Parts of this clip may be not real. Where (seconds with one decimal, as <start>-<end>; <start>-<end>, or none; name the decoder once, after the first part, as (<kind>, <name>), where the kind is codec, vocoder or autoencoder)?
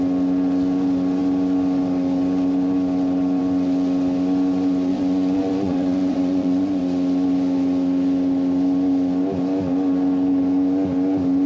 4.9-6.8 (vocoder, Vocos)